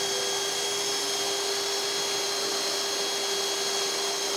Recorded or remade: recorded